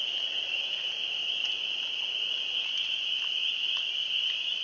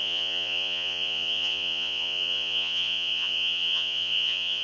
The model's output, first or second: second